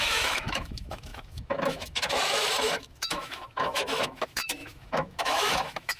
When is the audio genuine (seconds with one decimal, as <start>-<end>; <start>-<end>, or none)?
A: none